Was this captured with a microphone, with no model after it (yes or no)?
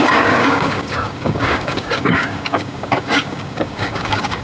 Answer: no